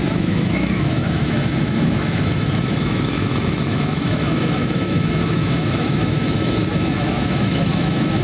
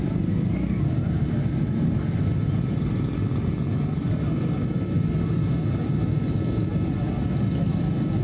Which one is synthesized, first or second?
first